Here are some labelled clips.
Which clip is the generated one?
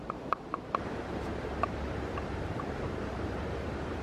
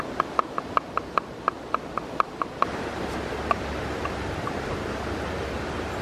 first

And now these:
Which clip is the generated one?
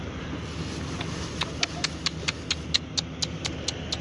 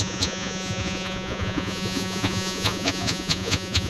second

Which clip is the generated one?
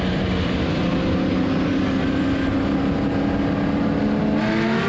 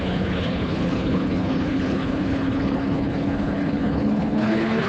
second